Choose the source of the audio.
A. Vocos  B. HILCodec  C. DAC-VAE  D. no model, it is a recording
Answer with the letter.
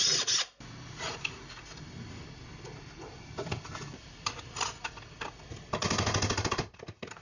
D